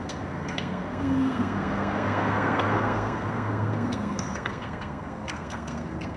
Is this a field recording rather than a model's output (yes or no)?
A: no